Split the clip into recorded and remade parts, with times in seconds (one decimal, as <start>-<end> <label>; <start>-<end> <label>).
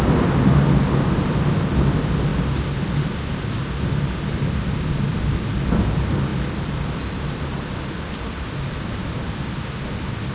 0.0-6.3 recorded; 6.3-9.6 remade; 9.6-10.3 recorded